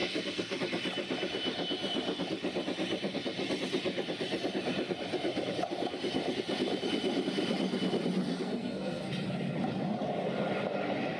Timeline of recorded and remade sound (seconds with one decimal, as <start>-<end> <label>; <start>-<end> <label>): 0.0-0.6 remade; 0.6-8.2 recorded; 8.2-9.1 remade; 9.1-11.2 recorded